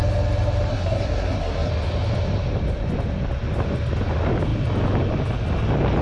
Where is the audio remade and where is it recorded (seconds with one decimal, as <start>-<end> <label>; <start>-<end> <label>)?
0.0-0.7 recorded; 0.7-1.7 remade; 1.7-6.0 recorded